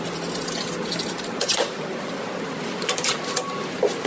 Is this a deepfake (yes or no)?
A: yes